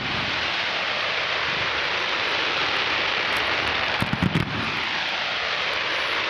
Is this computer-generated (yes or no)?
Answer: yes